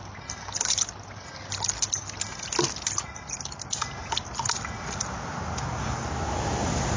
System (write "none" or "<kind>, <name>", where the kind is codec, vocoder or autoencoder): none